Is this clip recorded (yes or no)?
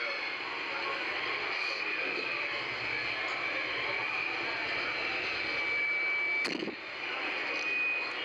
yes